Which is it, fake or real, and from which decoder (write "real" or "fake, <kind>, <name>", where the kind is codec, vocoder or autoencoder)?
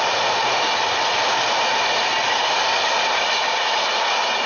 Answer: real